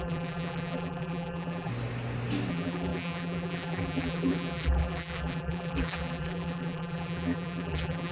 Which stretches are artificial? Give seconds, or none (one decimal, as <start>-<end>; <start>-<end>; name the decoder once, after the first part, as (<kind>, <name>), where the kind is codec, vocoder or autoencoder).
0.0-1.7 (vocoder, BigVGAN v2); 2.5-8.1